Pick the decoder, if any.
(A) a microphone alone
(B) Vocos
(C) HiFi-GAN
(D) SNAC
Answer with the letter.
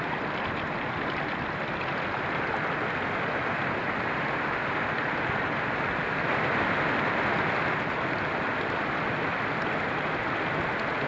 A